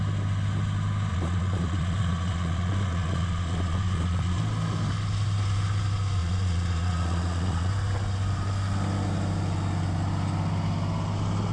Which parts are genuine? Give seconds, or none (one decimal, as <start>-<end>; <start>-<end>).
0.0-1.1; 4.4-6.2; 7.7-11.5